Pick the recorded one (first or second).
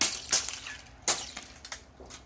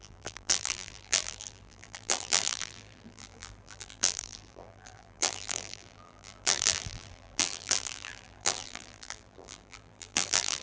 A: first